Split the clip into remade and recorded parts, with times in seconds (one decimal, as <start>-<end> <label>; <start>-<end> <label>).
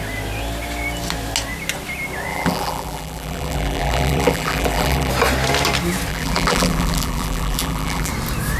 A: 0.0-2.3 recorded; 2.3-5.1 remade; 5.1-6.1 recorded; 6.1-8.1 remade; 8.1-8.6 recorded